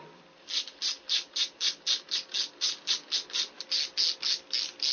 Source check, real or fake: real